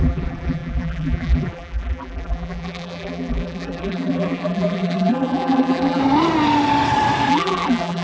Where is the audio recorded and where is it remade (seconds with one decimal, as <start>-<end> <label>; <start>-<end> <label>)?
0.0-6.0 remade; 6.0-7.3 recorded; 7.3-8.0 remade